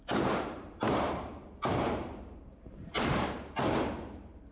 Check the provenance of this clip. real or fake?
fake